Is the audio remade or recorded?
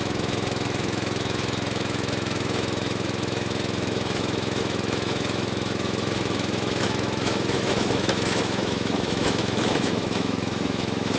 remade